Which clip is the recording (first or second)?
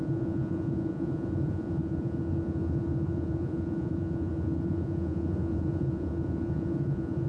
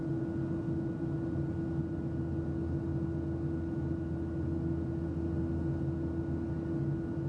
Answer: second